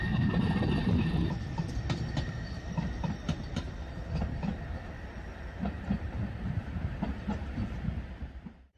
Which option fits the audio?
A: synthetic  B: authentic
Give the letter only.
A